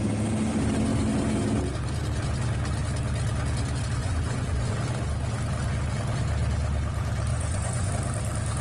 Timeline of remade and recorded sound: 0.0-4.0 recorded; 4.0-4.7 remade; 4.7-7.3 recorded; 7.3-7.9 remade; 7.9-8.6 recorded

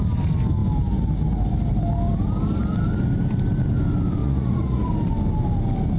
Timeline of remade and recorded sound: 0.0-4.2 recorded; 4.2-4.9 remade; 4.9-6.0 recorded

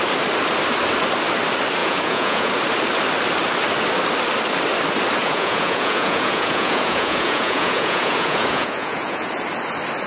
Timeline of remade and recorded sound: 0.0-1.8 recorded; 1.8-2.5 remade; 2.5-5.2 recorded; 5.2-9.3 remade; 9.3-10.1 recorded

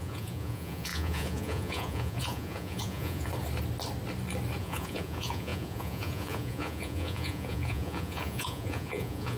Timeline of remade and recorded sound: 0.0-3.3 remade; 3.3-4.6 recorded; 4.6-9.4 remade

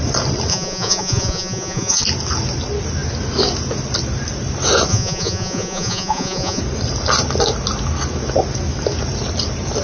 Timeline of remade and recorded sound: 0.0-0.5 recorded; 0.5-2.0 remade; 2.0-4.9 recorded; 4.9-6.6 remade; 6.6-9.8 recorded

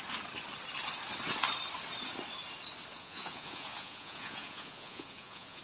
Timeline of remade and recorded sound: 0.0-2.9 recorded; 2.9-5.6 remade